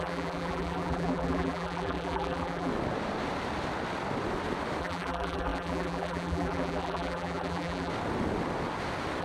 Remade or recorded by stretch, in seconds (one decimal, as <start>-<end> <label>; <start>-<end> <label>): 0.0-2.7 remade; 2.7-4.8 recorded; 4.8-7.9 remade; 7.9-9.2 recorded